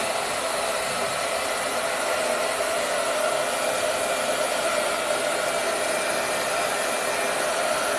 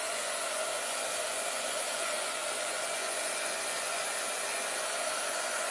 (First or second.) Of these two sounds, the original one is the first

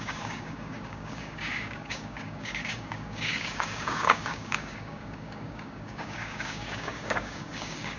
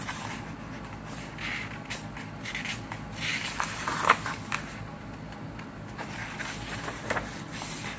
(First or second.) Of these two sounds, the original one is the second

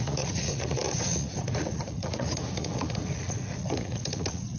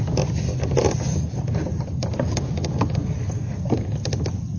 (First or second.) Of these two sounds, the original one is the second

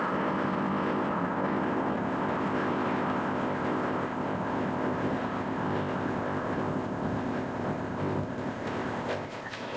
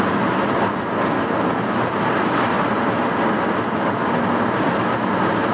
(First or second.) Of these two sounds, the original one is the second